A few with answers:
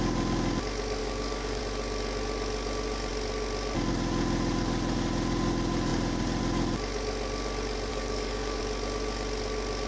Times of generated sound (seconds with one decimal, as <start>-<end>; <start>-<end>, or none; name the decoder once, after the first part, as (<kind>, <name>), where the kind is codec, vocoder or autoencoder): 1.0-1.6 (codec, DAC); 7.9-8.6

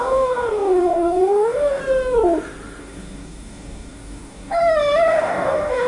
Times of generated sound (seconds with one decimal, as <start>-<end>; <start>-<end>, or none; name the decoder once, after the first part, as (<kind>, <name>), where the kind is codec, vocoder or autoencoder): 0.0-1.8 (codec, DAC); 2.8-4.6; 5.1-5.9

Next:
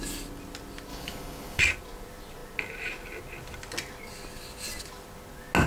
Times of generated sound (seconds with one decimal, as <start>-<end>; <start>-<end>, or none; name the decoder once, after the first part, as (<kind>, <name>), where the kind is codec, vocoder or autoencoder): 0.9-1.6 (codec, DAC)

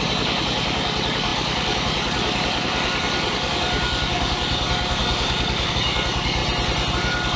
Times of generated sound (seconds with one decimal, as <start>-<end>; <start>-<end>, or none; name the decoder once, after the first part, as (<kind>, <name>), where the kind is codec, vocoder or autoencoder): 0.0-6.4 (codec, DAC); 6.9-7.4

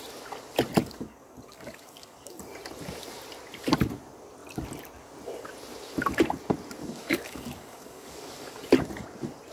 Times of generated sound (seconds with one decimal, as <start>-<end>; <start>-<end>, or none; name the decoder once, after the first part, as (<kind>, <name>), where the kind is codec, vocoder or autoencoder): 0.8-2.4 (codec, DAC); 6.8-8.6

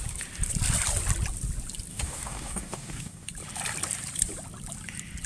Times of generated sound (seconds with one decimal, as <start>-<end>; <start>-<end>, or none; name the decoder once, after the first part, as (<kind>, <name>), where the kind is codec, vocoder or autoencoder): 1.9-3.3 (codec, DAC)

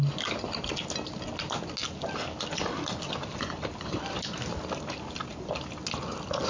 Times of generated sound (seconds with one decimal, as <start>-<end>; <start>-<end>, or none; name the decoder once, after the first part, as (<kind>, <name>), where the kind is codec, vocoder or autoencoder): none